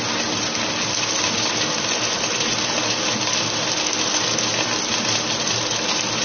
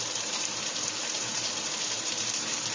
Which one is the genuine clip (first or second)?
first